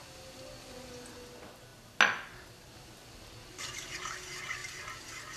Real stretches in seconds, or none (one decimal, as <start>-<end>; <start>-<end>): 0.0-5.4